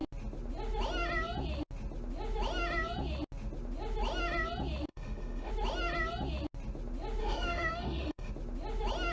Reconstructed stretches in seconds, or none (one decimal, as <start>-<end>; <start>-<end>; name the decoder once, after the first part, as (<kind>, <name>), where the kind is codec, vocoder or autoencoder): 4.9-5.5 (autoencoder, DAC-VAE); 7.2-8.3